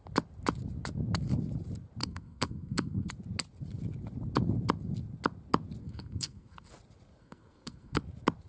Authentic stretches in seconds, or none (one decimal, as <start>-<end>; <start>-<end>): 0.0-2.0; 3.1-5.8; 6.7-7.2; 8.0-8.5